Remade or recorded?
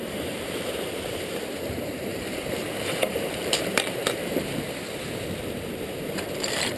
remade